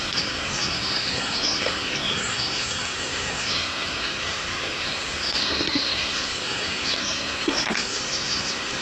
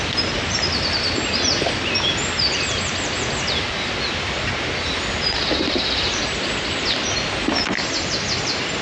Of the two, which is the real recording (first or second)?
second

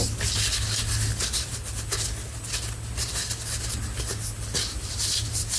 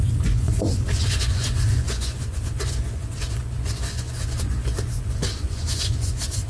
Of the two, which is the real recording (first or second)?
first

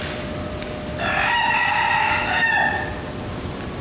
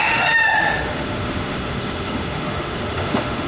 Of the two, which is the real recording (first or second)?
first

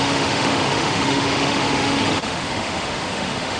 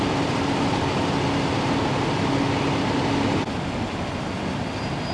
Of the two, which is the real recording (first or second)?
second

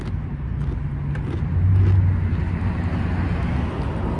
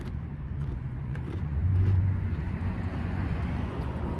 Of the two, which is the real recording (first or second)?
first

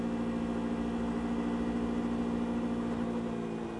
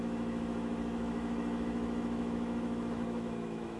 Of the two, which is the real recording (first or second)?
first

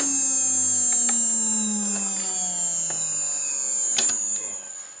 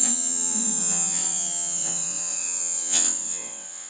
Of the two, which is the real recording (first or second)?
first